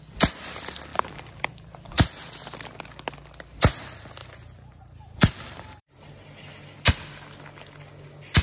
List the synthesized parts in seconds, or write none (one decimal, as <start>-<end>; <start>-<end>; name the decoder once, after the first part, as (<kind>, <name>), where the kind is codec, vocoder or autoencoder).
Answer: 0.9-2.3 (vocoder, BigVGAN v2); 4.2-6.4